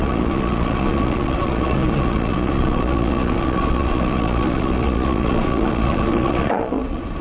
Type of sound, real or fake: fake